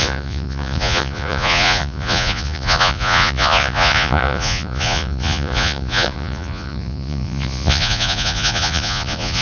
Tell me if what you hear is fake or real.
fake